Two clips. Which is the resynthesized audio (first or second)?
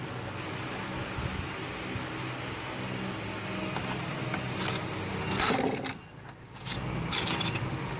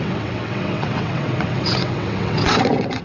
second